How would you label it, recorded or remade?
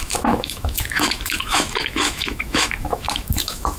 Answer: remade